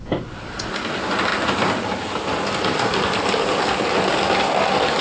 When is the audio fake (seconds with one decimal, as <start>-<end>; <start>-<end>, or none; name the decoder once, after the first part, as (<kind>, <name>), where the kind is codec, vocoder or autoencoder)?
none